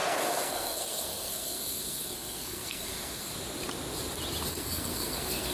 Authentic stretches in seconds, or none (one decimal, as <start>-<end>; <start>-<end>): 3.3-4.5